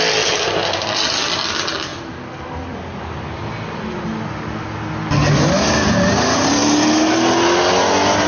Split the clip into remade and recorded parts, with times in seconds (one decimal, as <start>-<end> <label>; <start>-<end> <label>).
0.0-8.3 recorded